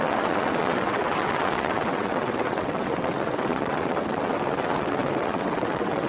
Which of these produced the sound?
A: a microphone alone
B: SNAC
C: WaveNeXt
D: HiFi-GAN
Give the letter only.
C